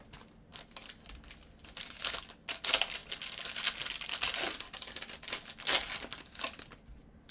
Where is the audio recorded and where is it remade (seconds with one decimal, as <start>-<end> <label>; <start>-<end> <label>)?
0.0-7.3 recorded